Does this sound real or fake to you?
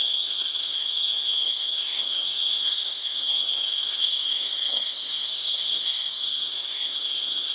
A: fake